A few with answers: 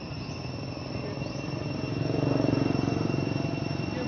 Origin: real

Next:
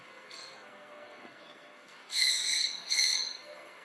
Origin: fake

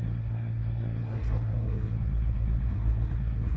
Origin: fake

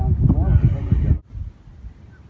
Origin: real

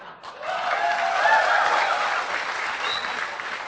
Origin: real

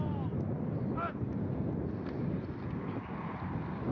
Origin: real